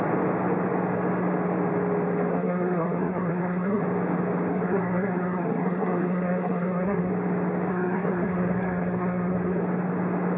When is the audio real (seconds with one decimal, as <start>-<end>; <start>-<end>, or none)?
0.0-2.3; 3.8-4.5; 7.1-7.7; 9.6-10.4